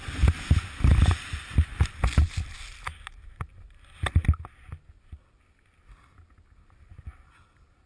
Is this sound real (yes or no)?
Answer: yes